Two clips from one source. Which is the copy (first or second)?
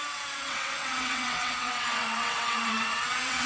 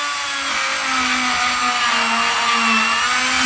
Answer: first